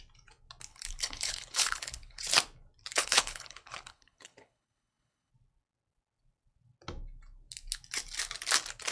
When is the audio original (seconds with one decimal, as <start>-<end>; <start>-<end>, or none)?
0.0-0.7; 2.2-2.9; 5.3-8.9

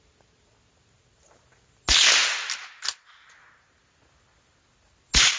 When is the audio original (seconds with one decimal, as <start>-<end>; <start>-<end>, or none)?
0.0-5.4